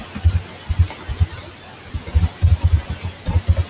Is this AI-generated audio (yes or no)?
no